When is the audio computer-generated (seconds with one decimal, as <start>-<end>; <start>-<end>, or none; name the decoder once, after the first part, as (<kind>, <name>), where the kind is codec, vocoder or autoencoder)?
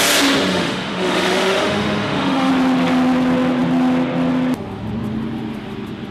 0.5-2.5 (autoencoder, DAC-VAE)